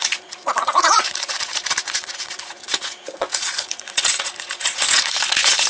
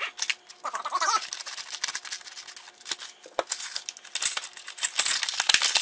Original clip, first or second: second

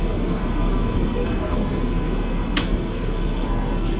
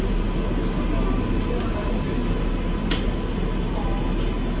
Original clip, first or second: second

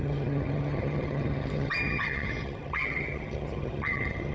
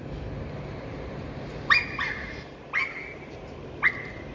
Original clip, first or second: second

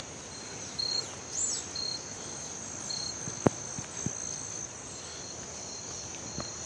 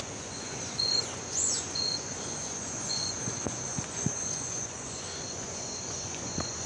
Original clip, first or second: first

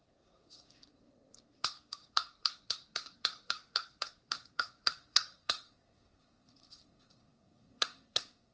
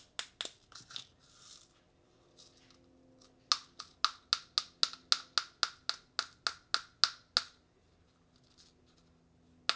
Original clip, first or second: second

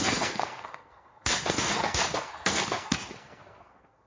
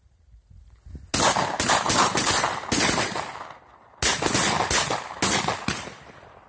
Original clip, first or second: second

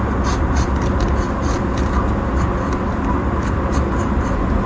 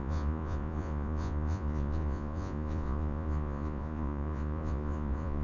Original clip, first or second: first